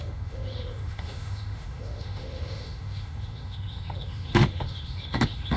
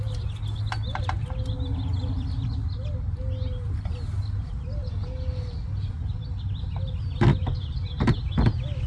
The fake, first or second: first